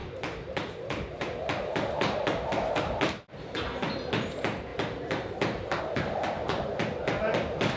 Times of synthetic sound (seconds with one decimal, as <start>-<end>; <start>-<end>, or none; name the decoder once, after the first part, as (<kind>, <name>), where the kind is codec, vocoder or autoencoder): 0.0-3.6 (vocoder, BigVGAN v2); 4.7-5.8

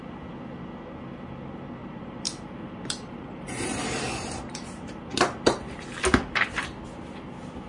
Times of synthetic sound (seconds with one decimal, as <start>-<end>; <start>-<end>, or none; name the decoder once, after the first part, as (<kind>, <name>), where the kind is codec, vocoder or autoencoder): 1.8-4.9 (vocoder, BigVGAN v2)

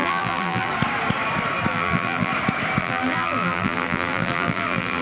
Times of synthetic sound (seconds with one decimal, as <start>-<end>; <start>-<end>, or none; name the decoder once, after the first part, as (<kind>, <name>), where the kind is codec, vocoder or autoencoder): 0.0-0.7 (vocoder, BigVGAN v2); 1.7-2.3; 2.8-5.0

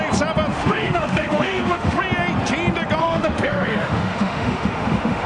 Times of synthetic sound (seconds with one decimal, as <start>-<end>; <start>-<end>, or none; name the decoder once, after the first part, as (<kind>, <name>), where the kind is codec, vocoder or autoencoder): 0.5-2.0 (autoencoder, DAC-VAE); 3.0-5.3

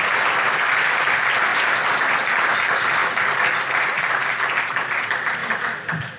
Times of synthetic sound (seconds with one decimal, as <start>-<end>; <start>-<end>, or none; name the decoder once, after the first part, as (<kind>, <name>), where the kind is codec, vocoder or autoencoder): 1.5-2.4 (vocoder, BigVGAN v2); 5.4-6.2

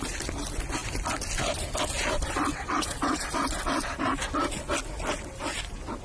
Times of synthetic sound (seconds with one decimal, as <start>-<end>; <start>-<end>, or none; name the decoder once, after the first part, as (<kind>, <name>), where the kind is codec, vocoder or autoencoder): 2.5-3.2 (vocoder, WaveNeXt)